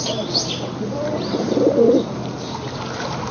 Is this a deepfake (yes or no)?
no